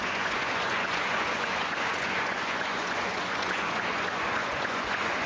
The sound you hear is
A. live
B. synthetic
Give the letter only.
B